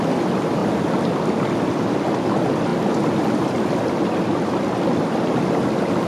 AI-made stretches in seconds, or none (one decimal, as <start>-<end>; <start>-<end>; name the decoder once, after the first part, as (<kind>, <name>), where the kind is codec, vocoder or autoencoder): none